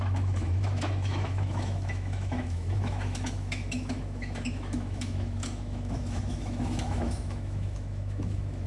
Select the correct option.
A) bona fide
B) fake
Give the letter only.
B